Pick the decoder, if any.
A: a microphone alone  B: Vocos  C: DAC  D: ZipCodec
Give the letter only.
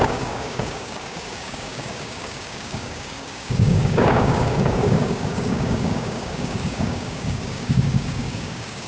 C